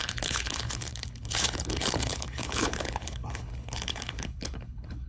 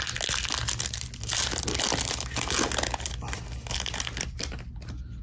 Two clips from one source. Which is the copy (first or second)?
first